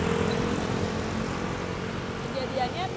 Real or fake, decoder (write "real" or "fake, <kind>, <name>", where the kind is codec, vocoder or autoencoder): real